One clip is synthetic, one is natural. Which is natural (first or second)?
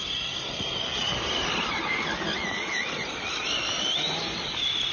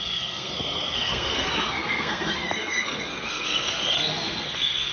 first